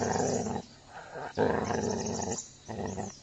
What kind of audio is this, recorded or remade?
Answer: recorded